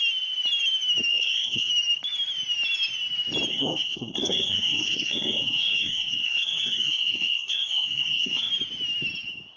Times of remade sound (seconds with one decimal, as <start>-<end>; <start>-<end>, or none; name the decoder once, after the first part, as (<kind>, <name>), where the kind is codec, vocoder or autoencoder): 1.1-1.7 (codec, SNAC); 3.5-8.5